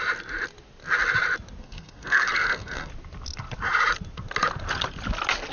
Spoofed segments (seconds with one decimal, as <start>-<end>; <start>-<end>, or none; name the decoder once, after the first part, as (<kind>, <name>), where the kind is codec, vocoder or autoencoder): 1.6-2.9 (codec, SNAC)